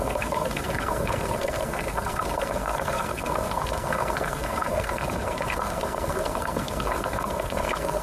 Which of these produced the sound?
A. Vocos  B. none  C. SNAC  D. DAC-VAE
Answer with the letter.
C